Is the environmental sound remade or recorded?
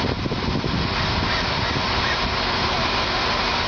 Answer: recorded